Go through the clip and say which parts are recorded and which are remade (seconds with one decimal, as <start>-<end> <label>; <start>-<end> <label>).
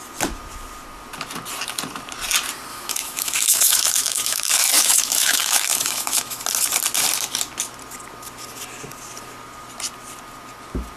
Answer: 0.0-2.7 recorded; 2.7-6.4 remade; 6.4-11.0 recorded